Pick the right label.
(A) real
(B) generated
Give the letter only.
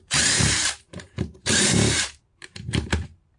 B